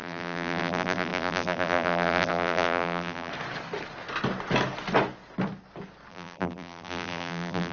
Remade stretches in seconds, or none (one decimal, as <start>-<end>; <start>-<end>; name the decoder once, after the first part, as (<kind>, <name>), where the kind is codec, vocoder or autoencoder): 0.0-3.3 (vocoder, BigVGAN v2); 6.1-7.7